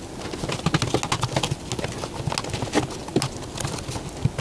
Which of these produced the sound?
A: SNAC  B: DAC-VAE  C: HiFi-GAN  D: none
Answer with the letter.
D